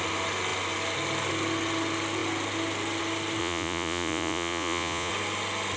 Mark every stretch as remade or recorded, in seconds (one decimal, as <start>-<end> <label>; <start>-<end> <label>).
0.0-3.4 recorded; 3.4-5.1 remade; 5.1-5.8 recorded